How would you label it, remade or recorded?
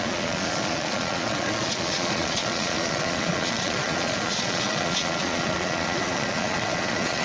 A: remade